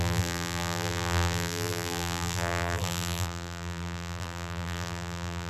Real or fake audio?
fake